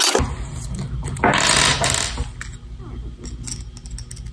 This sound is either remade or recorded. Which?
recorded